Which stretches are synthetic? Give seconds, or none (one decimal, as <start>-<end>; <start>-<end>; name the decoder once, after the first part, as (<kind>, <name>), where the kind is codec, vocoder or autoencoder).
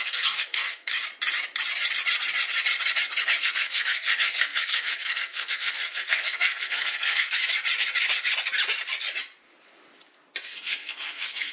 0.0-0.9 (codec, SNAC); 3.4-7.4; 10.4-11.5